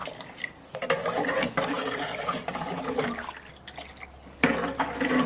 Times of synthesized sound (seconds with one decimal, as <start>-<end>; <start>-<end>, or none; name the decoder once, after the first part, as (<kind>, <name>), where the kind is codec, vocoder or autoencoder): 0.0-3.0 (vocoder, BigVGAN v2)